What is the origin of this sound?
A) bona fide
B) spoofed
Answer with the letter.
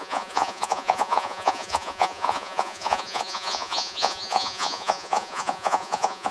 B